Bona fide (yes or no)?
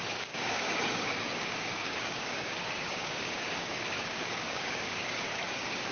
no